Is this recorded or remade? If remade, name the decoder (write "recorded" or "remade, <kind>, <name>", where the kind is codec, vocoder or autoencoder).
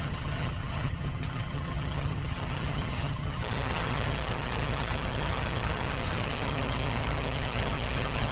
remade, vocoder, HiFi-GAN